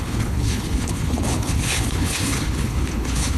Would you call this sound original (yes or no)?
no